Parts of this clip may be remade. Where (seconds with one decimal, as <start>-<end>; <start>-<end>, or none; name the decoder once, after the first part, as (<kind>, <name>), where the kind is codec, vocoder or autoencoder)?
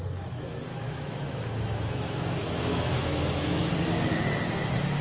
0.7-3.7 (autoencoder, DAC-VAE)